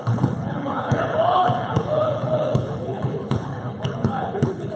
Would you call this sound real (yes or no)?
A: no